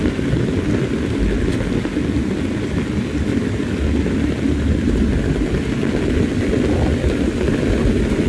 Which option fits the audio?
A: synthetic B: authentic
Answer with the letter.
B